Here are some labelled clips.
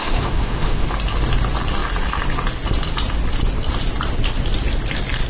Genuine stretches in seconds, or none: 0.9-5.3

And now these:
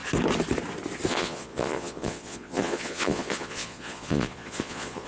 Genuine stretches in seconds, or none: 0.0-1.1

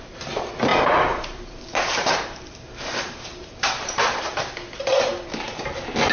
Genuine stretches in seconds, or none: 0.0-0.7; 4.4-4.9; 5.6-6.1

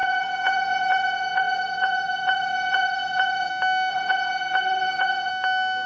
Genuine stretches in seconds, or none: 3.5-3.9; 5.3-5.9

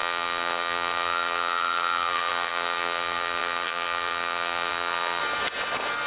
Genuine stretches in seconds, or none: 5.2-6.1

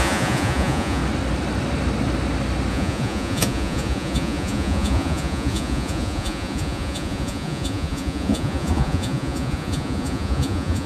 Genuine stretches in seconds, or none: 1.0-2.7